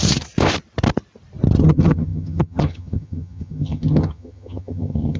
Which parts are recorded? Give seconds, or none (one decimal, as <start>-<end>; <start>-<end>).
0.0-1.6